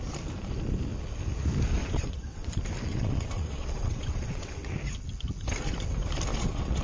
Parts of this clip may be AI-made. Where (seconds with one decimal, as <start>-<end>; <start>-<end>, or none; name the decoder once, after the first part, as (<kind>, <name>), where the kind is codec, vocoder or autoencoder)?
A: 1.8-2.5 (vocoder, WaveNeXt); 2.9-4.7; 6.3-6.8